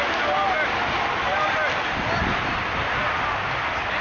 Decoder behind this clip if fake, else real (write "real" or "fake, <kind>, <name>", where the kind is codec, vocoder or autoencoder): real